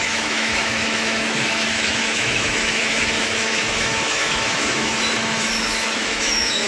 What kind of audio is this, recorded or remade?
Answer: remade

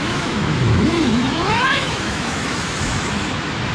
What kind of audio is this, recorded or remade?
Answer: remade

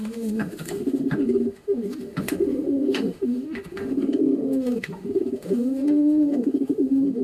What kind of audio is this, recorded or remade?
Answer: remade